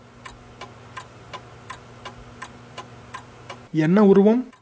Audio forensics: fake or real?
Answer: real